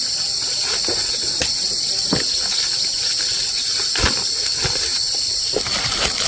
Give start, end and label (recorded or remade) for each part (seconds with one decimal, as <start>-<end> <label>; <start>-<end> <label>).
0.0-1.4 recorded; 1.4-1.9 remade; 1.9-3.3 recorded; 3.3-3.9 remade; 3.9-4.9 recorded; 4.9-6.3 remade